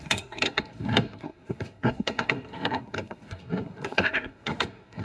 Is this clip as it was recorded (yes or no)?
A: no